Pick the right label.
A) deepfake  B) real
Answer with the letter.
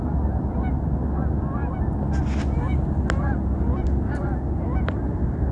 B